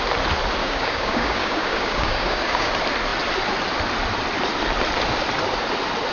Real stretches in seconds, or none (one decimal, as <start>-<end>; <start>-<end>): 0.0-0.6; 2.7-6.1